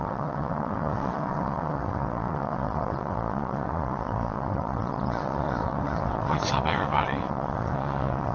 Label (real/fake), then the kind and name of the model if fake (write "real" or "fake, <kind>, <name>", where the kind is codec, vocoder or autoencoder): fake, vocoder, WaveNeXt